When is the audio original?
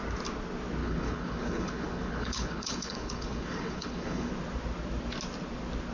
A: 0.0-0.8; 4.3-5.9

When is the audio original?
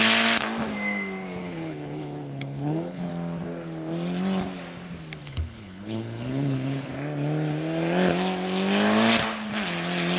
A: 0.0-1.4; 3.1-5.2; 6.9-10.2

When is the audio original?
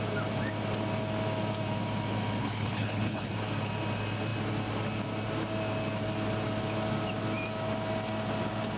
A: 0.0-2.4; 3.3-8.8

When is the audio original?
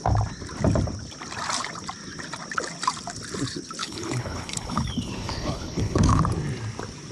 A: 0.0-3.8; 6.2-7.1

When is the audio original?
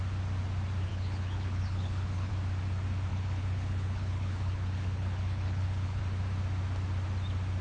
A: 0.0-0.9; 2.3-3.1; 6.0-7.6